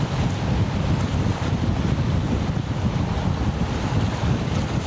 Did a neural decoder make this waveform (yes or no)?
no